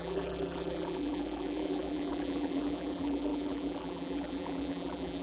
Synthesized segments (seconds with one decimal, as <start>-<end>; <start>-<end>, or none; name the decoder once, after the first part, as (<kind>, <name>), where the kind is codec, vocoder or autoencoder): 0.0-5.2 (vocoder, BigVGAN v2)